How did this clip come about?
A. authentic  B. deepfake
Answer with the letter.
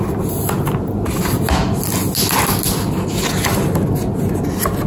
A